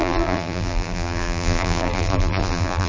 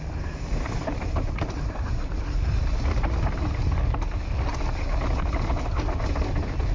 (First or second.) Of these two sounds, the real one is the second